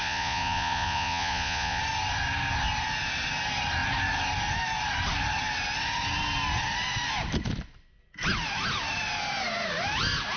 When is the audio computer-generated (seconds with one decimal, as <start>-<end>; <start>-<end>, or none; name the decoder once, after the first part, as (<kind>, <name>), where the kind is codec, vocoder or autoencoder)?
0.0-1.8 (vocoder, Vocos)